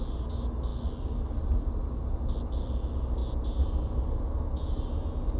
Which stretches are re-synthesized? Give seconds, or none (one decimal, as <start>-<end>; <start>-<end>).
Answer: none